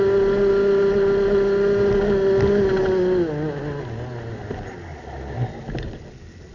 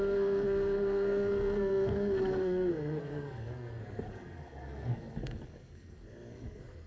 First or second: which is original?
first